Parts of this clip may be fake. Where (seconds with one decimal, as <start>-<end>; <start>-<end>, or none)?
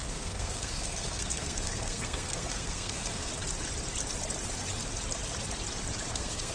0.0-3.3; 6.1-6.5